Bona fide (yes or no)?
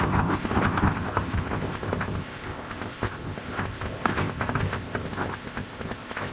no